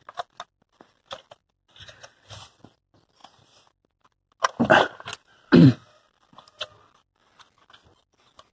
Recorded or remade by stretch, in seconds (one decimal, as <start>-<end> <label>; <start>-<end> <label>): 0.0-8.5 recorded